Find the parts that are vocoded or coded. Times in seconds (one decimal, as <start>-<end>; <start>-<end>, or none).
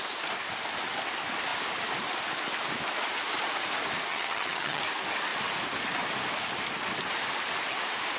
4.1-4.8